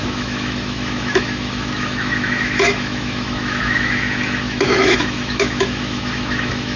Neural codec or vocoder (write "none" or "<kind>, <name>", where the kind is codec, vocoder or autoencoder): autoencoder, DAC-VAE